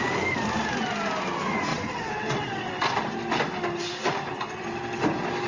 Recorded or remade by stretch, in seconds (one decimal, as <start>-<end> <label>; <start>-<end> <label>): 0.0-1.7 recorded; 1.7-2.7 remade; 2.7-5.5 recorded